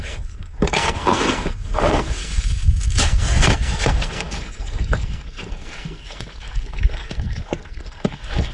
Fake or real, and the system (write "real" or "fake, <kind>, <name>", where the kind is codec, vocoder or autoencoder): fake, codec, SNAC